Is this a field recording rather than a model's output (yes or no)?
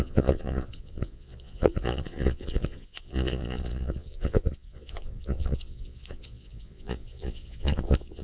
no